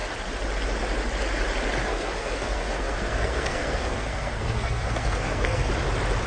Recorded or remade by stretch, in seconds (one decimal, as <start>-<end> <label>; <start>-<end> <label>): 0.0-1.9 recorded; 1.9-5.7 remade; 5.7-6.3 recorded